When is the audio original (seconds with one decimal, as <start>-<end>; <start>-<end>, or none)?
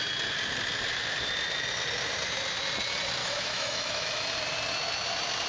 0.0-3.2; 4.1-5.5